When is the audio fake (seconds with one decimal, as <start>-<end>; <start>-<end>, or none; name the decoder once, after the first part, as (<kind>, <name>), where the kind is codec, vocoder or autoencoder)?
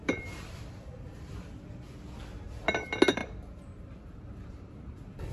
0.0-1.5 (vocoder, BigVGAN v2); 3.2-5.3